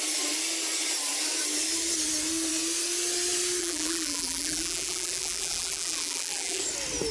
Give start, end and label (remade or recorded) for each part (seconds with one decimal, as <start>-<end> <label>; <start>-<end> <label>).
0.0-3.6 recorded; 3.6-6.6 remade; 6.6-7.1 recorded